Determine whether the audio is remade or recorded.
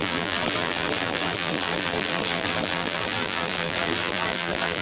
remade